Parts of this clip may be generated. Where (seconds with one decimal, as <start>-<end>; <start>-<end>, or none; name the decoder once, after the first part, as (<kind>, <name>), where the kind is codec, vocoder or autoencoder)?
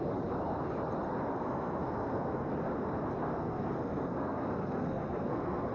1.3-2.5 (codec, SNAC); 3.2-5.7